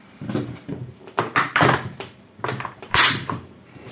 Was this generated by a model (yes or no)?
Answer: yes